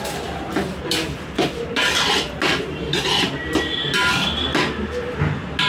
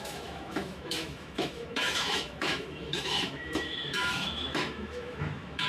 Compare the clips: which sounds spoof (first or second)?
second